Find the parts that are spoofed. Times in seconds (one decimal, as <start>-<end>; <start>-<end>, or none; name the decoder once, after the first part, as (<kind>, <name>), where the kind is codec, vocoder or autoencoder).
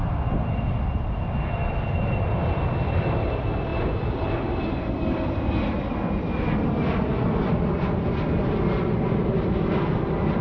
none